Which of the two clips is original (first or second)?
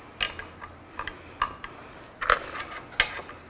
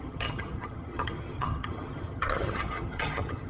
first